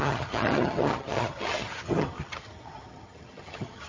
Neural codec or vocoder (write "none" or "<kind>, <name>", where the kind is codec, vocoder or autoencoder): vocoder, HiFi-GAN